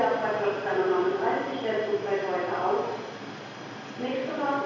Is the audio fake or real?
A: real